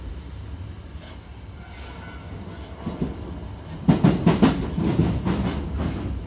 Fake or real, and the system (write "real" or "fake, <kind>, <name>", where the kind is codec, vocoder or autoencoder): real